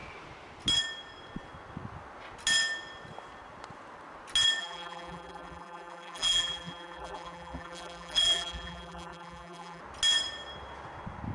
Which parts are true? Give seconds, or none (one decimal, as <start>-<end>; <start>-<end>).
0.0-4.6; 9.8-11.3

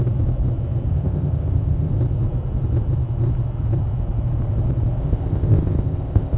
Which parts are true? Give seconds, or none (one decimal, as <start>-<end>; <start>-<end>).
0.0-0.9; 1.9-5.0

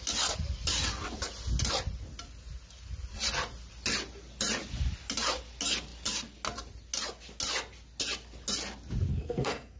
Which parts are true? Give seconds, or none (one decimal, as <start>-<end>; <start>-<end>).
0.0-9.1